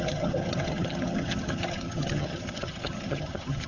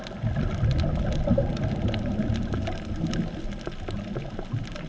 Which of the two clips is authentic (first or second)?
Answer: second